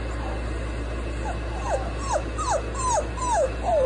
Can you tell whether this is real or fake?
real